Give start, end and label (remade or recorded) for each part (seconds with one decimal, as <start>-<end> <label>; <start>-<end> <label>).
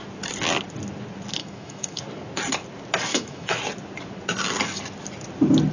0.0-1.4 recorded; 1.4-2.0 remade; 2.0-3.1 recorded; 3.1-3.6 remade; 3.6-5.7 recorded